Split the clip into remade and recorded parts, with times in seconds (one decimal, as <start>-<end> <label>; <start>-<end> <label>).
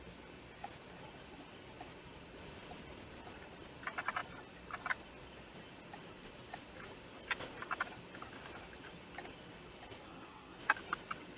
0.0-10.0 recorded; 10.0-10.6 remade; 10.6-11.4 recorded